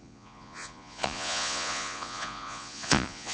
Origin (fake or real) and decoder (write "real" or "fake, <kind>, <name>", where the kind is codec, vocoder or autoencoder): fake, vocoder, Vocos